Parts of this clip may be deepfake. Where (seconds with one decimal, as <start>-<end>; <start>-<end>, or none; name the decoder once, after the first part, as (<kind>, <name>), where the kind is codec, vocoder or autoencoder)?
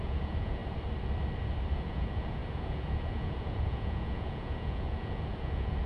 0.0-0.6 (vocoder, Vocos); 1.7-5.9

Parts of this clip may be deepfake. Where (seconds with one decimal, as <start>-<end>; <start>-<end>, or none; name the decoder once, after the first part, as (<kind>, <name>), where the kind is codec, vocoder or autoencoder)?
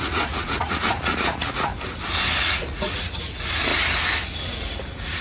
0.0-1.7 (vocoder, Vocos); 2.4-3.7; 4.4-5.2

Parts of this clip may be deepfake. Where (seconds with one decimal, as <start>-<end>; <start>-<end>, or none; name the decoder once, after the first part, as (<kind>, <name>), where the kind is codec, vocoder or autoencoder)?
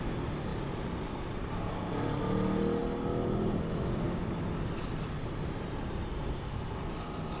none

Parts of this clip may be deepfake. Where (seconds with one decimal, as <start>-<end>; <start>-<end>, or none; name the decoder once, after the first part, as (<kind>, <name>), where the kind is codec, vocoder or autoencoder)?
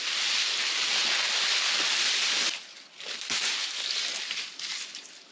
none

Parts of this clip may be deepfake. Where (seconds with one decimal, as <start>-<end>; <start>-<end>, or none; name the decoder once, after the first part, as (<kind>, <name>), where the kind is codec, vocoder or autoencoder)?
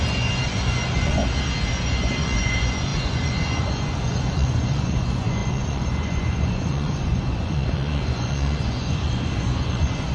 0.0-1.2 (vocoder, Vocos); 1.7-10.1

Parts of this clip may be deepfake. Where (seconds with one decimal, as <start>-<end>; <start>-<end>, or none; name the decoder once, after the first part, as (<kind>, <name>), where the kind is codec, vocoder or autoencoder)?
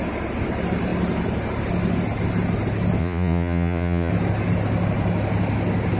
3.0-4.1 (vocoder, Vocos)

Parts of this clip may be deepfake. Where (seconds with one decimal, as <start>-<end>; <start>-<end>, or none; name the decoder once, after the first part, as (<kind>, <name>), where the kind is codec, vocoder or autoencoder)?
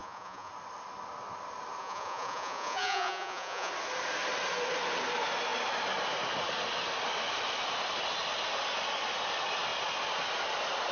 0.0-0.5 (vocoder, Vocos); 1.8-3.7